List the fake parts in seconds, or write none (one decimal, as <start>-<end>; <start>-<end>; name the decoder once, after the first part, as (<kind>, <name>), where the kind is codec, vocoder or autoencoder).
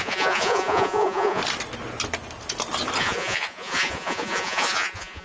0.0-1.4 (vocoder, Vocos); 3.0-5.2